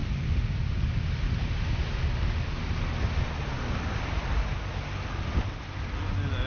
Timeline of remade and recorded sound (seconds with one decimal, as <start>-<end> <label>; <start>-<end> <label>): 0.0-6.5 recorded